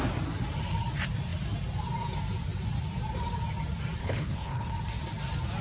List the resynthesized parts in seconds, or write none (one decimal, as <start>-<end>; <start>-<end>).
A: 4.0-4.7

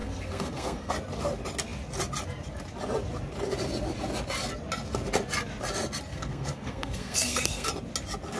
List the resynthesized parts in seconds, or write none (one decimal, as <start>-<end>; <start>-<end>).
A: 0.0-0.9; 6.1-7.7

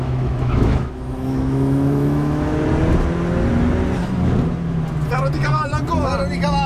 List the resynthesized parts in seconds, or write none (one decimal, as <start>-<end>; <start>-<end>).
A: 0.0-2.5

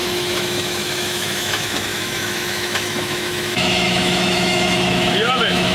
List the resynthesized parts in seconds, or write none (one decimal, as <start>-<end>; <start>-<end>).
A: 0.0-5.7

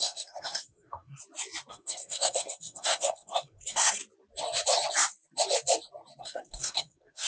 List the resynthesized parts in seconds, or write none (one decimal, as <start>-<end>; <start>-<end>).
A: 0.0-1.2; 1.7-4.0; 6.2-7.3

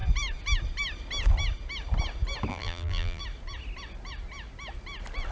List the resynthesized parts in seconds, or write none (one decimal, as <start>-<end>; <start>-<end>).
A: 2.5-3.2

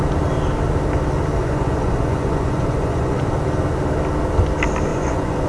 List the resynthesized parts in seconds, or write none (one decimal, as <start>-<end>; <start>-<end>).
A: 1.4-3.3; 4.9-5.5